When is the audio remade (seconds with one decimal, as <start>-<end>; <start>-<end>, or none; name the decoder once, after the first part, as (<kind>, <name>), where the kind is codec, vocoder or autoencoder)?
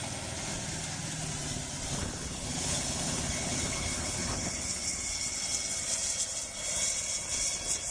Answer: 2.0-5.0 (codec, HILCodec)